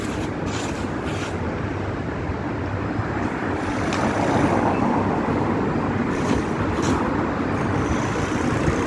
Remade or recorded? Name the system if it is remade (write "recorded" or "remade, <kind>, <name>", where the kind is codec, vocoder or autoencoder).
recorded